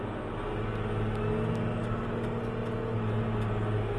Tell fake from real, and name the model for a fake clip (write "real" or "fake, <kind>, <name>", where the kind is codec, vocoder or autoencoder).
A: real